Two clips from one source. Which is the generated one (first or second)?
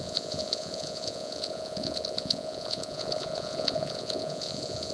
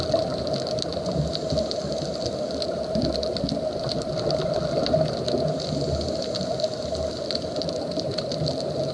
first